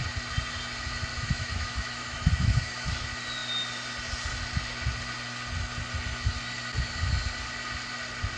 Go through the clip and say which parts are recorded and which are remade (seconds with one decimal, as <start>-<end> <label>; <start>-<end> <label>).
0.0-1.1 recorded; 1.1-2.9 remade; 2.9-8.4 recorded